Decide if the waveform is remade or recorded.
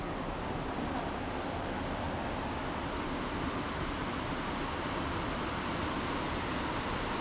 recorded